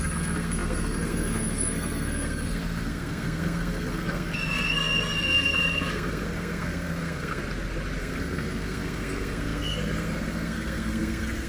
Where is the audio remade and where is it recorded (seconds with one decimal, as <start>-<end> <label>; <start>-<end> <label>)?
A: 0.0-7.4 remade; 7.4-8.0 recorded; 8.0-11.5 remade